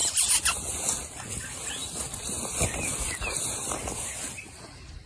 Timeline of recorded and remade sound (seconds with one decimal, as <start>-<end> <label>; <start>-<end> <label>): 0.0-1.8 recorded; 1.8-5.1 remade